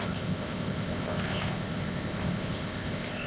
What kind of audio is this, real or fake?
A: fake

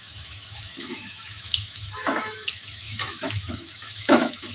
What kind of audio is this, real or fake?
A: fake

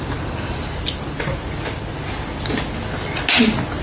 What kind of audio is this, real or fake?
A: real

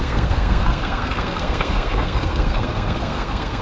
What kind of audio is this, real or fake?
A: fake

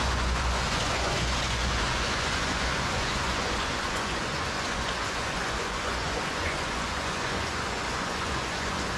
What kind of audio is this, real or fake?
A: fake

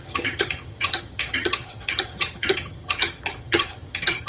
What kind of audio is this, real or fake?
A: fake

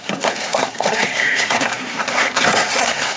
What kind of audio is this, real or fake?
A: fake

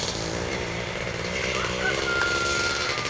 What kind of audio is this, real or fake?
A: real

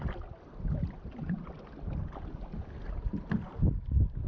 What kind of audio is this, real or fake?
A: real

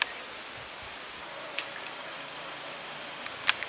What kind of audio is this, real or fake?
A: real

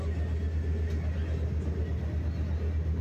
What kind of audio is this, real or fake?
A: real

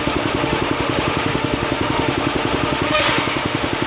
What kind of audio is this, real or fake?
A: fake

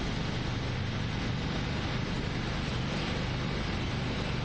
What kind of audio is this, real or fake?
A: real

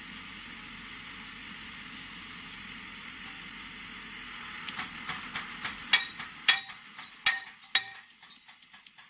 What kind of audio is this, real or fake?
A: real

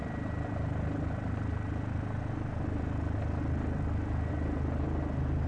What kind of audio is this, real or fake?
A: real